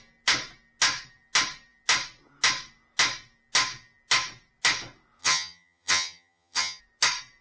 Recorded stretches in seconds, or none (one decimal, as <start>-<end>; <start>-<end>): 0.0-5.2; 6.8-7.4